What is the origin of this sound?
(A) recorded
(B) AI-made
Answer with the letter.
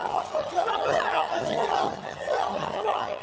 B